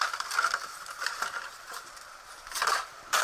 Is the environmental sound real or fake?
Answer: fake